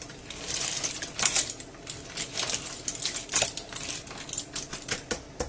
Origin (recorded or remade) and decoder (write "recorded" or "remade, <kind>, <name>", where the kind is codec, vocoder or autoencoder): remade, vocoder, BigVGAN v2